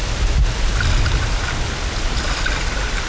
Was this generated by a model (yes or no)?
no